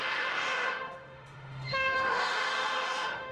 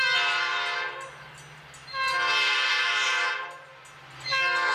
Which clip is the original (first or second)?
second